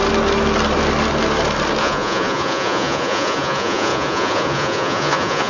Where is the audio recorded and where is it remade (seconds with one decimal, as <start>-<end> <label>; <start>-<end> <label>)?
0.0-1.8 recorded; 1.8-5.5 remade